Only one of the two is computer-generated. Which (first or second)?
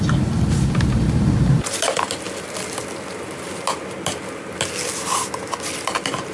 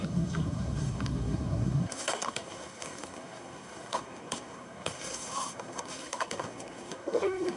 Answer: second